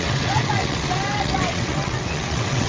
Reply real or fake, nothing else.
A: fake